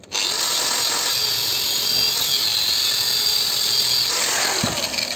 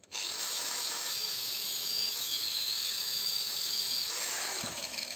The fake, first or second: second